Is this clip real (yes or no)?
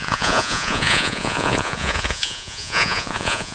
no